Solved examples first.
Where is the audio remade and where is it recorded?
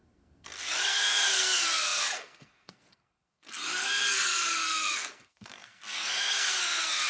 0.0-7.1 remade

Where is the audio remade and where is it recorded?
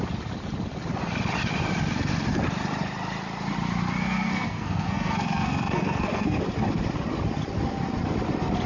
0.0-4.0 recorded; 4.0-6.4 remade; 6.4-8.7 recorded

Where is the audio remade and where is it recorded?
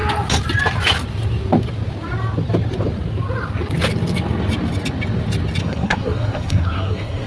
0.0-5.6 recorded; 5.6-7.3 remade